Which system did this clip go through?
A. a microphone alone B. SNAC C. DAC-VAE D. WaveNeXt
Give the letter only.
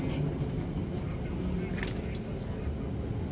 A